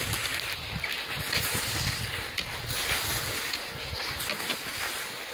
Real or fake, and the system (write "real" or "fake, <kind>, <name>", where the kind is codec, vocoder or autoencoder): real